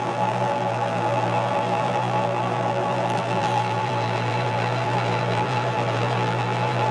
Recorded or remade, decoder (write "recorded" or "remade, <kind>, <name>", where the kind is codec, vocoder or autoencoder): remade, vocoder, BigVGAN v2